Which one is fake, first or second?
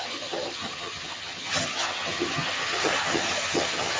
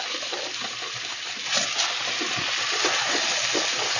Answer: first